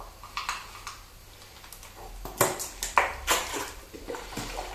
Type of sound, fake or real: real